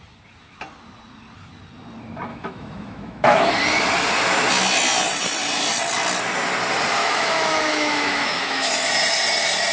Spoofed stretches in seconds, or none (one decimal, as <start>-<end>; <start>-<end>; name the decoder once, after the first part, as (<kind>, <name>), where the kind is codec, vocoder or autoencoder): 2.3-3.5 (autoencoder, DAC-VAE); 7.0-8.7